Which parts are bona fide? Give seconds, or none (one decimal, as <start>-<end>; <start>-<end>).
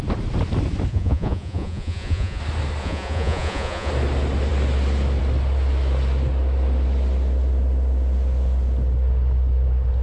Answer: 0.0-0.9; 2.4-2.8; 3.9-10.0